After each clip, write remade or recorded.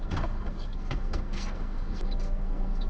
remade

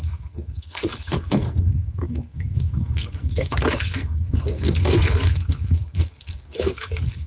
remade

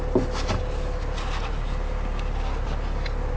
recorded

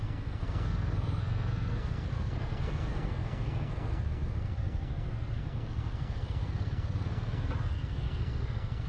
remade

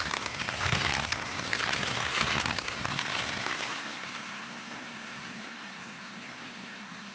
remade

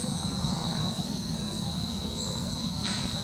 remade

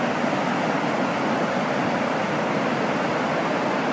recorded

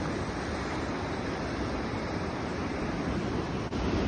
recorded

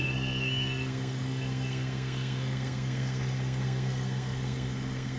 remade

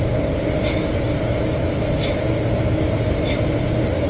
recorded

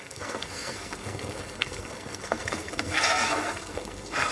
remade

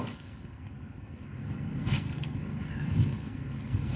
remade